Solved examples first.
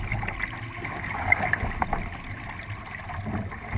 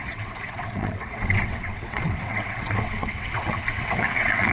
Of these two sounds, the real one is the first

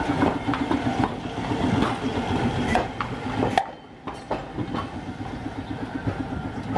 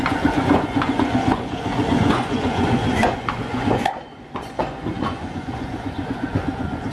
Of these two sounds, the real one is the first